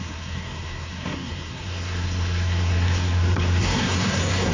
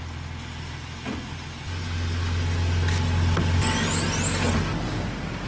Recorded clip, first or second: second